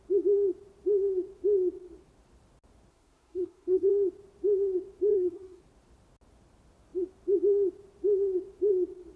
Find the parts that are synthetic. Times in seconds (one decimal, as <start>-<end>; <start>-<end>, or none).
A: 2.9-3.9; 5.1-5.6